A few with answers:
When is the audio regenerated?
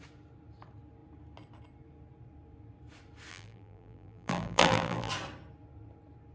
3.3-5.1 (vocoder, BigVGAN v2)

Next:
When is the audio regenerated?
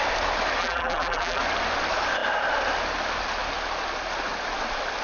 0.6-1.4 (vocoder, BigVGAN v2)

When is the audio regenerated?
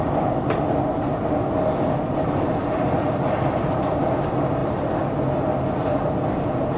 none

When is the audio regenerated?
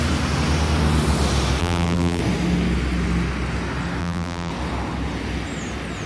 1.6-2.2 (vocoder, BigVGAN v2); 4.0-4.5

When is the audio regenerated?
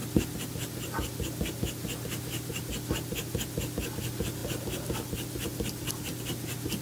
none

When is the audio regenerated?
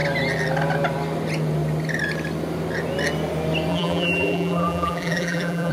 3.7-5.7 (vocoder, BigVGAN v2)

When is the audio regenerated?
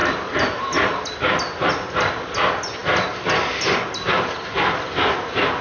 0.0-5.6 (vocoder, BigVGAN v2)